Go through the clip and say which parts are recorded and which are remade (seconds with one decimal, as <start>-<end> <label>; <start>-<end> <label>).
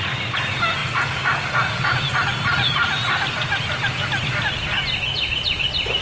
0.0-6.0 recorded